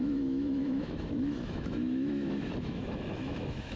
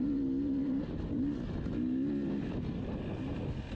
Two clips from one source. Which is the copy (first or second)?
first